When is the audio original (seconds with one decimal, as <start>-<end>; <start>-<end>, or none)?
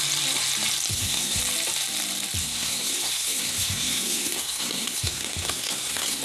0.0-0.9; 1.4-2.4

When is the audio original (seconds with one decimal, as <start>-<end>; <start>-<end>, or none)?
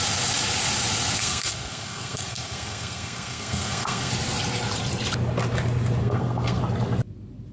0.0-1.2; 4.1-6.0; 6.6-7.5